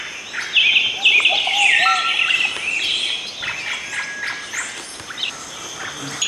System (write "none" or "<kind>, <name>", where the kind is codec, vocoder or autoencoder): none